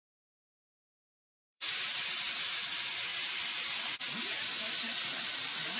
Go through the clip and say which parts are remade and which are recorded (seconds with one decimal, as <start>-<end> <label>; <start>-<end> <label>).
0.0-0.9 recorded; 0.9-1.8 remade; 1.8-3.1 recorded; 3.1-3.8 remade; 3.8-5.8 recorded

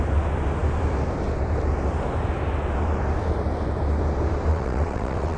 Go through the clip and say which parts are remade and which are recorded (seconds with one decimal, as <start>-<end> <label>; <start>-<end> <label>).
0.0-4.5 recorded; 4.5-5.4 remade